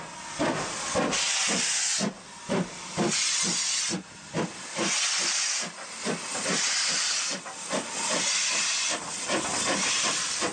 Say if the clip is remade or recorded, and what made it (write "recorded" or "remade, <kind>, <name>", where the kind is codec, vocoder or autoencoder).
recorded